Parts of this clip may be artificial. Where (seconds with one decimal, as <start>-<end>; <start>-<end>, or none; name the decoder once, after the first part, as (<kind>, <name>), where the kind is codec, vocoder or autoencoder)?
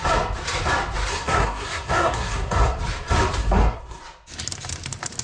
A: 1.1-2.8 (codec, SNAC); 3.4-4.0